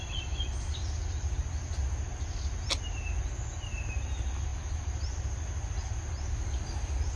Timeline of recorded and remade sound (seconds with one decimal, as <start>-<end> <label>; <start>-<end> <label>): 0.0-4.5 recorded; 4.5-5.3 remade; 5.3-7.2 recorded